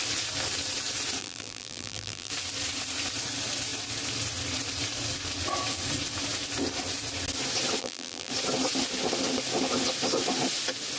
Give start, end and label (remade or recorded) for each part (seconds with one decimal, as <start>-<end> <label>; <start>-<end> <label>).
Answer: 0.0-1.2 recorded; 1.2-2.3 remade; 2.3-7.8 recorded; 7.8-8.3 remade; 8.3-11.0 recorded